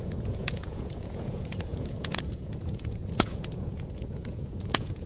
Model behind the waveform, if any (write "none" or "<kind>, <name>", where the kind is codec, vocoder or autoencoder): vocoder, Vocos